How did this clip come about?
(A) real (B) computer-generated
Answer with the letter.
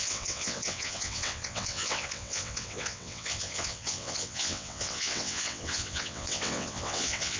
B